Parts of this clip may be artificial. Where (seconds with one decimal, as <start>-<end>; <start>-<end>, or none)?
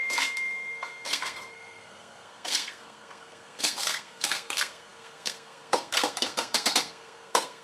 0.0-7.6